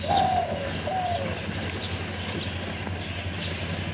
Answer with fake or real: real